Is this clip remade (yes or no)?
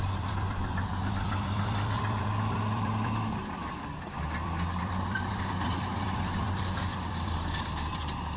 yes